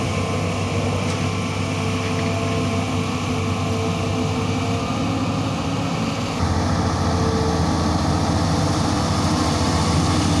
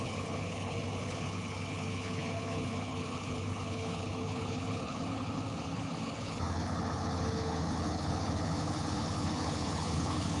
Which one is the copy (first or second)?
second